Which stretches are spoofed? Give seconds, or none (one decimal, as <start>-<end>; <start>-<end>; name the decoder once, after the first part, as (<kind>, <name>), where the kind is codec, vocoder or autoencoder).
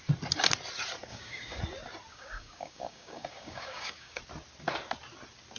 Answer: 1.1-1.6 (codec, DAC); 2.1-4.2